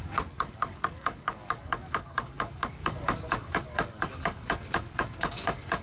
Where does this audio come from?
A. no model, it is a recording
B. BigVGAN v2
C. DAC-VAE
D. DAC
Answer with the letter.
D